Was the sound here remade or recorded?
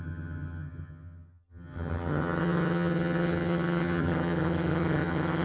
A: remade